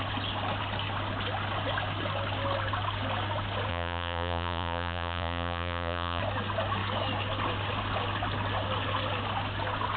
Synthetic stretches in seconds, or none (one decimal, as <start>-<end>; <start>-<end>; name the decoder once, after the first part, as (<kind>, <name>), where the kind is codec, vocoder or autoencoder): 3.7-6.2 (vocoder, Vocos)

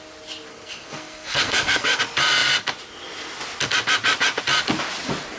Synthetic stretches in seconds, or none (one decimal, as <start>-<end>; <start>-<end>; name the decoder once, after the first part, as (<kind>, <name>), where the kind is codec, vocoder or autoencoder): 0.5-2.0 (codec, SNAC)

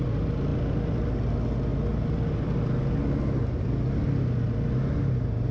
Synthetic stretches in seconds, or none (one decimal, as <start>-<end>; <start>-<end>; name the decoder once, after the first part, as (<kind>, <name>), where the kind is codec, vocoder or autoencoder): none